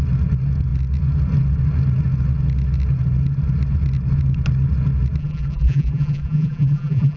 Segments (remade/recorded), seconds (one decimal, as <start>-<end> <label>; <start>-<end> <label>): 0.0-5.2 recorded; 5.2-7.2 remade